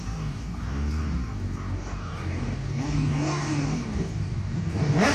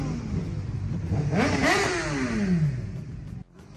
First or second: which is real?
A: second